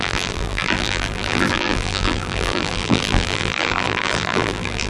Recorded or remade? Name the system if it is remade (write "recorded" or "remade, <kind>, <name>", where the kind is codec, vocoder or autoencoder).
remade, vocoder, BigVGAN v2